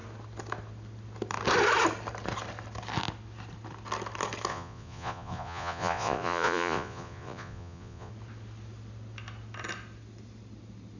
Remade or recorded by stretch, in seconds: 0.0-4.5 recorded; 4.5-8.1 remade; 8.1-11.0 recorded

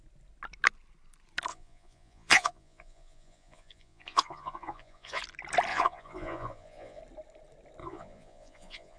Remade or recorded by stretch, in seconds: 0.0-1.5 recorded; 1.5-5.2 remade; 5.2-5.7 recorded; 5.7-7.0 remade; 7.0-7.8 recorded; 7.8-9.0 remade

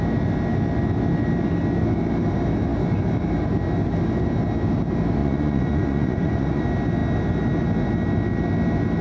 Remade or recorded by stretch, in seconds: 0.0-5.2 recorded; 5.2-6.6 remade; 6.6-9.0 recorded